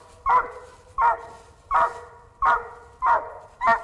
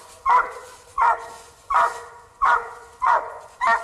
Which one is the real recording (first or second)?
first